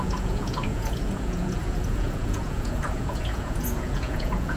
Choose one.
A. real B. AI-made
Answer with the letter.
B